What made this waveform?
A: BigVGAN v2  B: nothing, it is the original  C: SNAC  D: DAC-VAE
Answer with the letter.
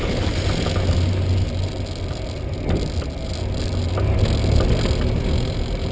B